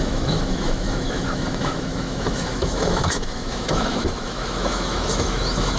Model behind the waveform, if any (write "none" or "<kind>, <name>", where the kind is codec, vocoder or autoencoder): autoencoder, DAC-VAE